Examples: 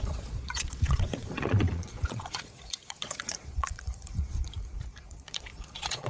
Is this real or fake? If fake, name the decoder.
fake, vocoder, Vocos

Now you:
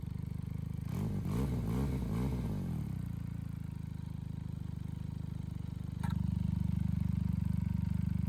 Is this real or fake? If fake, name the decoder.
real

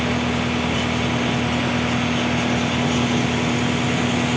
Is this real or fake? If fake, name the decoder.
real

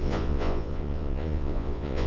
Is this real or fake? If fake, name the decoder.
fake, vocoder, Vocos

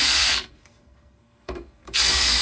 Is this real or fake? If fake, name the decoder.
fake, codec, SNAC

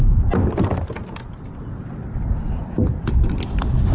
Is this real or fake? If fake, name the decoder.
real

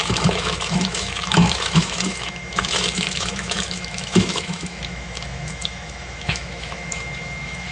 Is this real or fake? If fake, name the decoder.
fake, autoencoder, DAC-VAE